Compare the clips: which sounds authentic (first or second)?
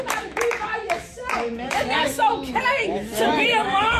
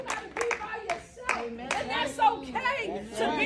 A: second